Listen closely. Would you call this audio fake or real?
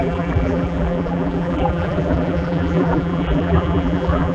fake